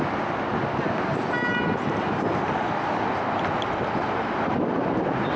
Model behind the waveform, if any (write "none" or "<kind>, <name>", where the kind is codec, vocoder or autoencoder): none